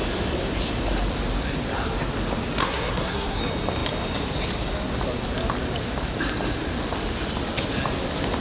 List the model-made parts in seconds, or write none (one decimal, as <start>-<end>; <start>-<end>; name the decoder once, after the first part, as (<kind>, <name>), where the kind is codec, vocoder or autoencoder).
2.6-3.4 (codec, SNAC)